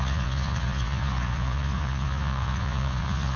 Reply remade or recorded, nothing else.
remade